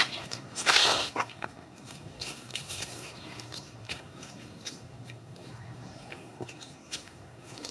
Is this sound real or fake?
fake